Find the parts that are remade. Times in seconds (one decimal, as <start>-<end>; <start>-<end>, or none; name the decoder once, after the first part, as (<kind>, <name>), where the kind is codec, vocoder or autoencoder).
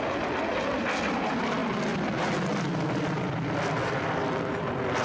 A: none